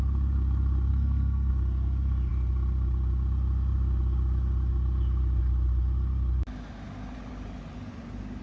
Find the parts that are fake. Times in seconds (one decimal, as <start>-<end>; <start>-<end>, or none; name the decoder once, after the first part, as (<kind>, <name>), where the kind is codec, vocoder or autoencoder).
0.9-1.5 (codec, SNAC)